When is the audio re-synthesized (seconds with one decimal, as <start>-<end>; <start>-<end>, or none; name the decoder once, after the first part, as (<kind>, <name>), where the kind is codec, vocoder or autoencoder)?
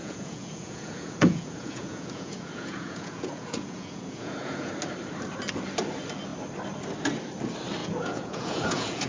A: 0.0-4.7 (vocoder, Vocos); 7.8-9.1